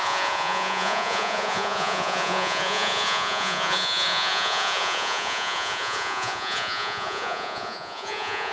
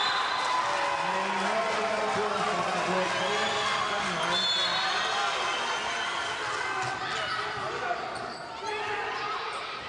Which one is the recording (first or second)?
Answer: second